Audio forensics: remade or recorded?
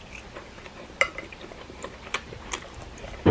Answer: recorded